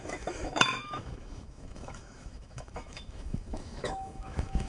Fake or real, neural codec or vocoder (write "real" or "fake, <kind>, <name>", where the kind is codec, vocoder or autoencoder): fake, autoencoder, DAC-VAE